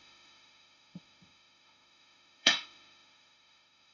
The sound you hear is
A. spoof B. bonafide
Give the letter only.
A